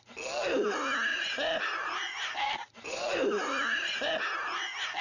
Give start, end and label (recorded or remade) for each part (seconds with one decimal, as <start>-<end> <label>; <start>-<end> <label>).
0.0-1.1 recorded; 1.1-4.1 remade; 4.1-5.0 recorded